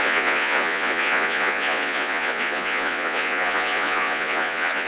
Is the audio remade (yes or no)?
yes